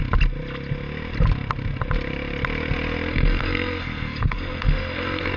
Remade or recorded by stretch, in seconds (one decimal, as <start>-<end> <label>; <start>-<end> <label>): 0.0-3.1 recorded; 3.1-5.4 remade